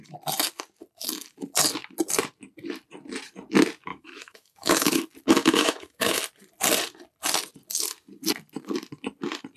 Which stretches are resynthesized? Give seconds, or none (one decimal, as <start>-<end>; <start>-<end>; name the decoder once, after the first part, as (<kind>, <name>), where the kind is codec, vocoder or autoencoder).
3.9-5.0 (autoencoder, DAC-VAE); 5.4-6.2